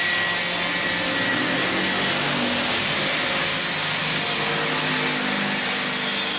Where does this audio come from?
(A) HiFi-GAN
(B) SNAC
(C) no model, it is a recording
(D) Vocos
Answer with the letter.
C